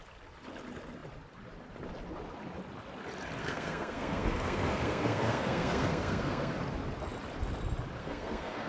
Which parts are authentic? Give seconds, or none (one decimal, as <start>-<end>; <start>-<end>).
0.0-3.4; 6.6-8.0